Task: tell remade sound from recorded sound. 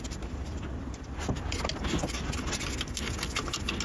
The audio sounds recorded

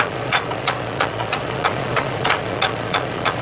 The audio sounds remade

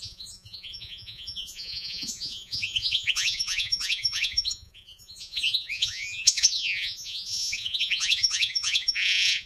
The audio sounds remade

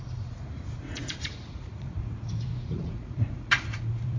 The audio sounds remade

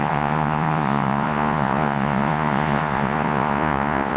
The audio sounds remade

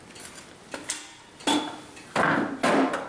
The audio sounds recorded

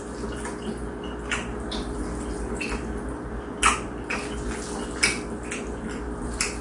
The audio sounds recorded